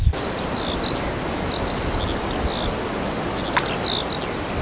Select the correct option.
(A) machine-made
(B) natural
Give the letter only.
B